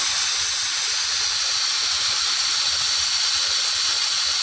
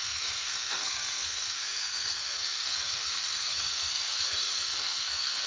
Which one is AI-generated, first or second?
second